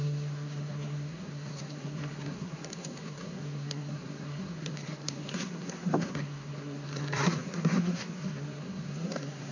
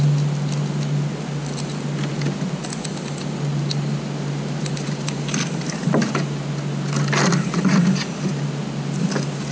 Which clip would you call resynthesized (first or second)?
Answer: first